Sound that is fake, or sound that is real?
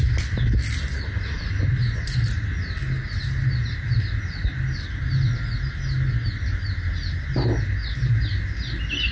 real